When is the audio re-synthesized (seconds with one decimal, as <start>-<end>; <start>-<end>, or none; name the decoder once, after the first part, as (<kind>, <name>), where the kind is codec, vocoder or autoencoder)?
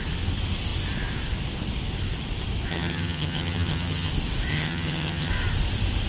2.7-4.1 (vocoder, HiFi-GAN); 4.5-5.3